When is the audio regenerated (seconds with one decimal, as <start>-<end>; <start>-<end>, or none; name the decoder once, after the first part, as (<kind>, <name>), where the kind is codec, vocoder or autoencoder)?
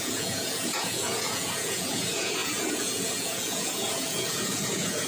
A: 0.0-5.1 (vocoder, Vocos)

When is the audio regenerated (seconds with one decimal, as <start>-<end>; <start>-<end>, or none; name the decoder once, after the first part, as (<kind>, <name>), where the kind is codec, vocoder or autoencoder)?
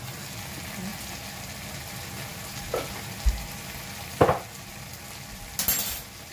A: none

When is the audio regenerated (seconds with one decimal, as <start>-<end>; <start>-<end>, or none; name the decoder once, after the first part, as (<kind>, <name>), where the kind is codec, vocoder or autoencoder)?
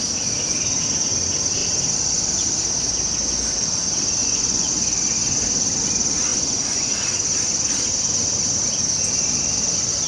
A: 4.2-4.7 (vocoder, Vocos); 6.3-6.9